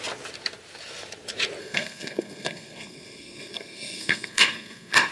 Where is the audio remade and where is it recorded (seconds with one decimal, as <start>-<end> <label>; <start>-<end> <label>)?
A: 0.0-1.6 recorded; 1.6-5.1 remade